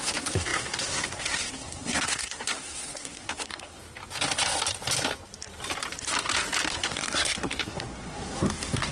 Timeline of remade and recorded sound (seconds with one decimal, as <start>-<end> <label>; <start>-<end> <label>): 0.0-3.8 remade; 3.8-6.7 recorded; 6.7-8.9 remade